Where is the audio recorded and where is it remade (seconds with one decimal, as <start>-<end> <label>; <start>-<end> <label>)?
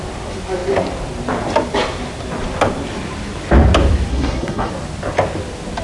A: 0.0-4.1 recorded; 4.1-4.7 remade; 4.7-5.8 recorded